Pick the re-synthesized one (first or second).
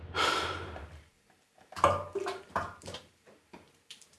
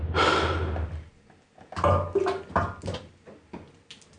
first